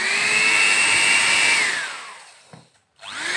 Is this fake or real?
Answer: real